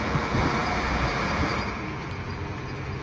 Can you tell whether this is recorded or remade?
remade